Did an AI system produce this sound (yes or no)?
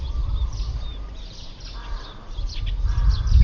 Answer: no